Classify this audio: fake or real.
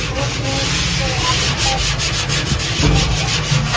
real